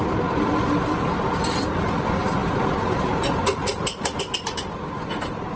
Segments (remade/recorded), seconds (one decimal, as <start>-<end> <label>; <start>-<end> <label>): 0.0-5.6 recorded

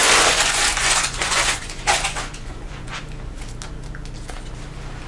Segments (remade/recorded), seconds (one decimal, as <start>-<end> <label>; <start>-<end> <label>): 0.0-3.0 remade; 3.0-5.1 recorded